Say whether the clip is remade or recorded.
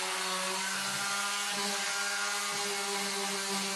recorded